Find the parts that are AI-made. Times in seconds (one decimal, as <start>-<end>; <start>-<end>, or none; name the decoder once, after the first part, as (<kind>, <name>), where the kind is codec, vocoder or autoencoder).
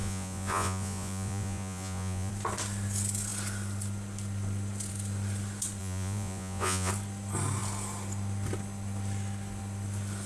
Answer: 0.0-2.3 (vocoder, Vocos); 5.8-6.9